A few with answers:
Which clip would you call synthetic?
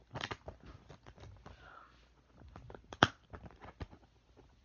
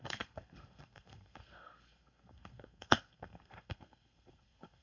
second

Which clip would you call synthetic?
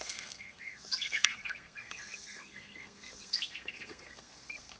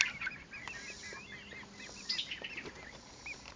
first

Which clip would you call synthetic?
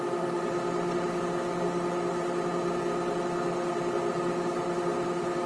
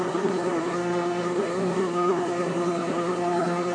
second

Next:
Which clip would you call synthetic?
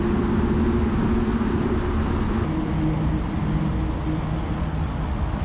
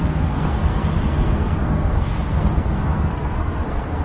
second